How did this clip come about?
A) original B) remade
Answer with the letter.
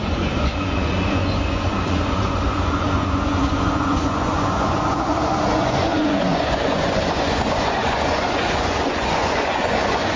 B